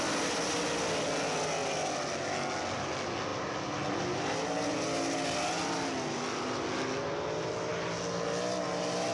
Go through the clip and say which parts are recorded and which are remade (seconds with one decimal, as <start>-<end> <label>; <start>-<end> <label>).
0.0-9.1 recorded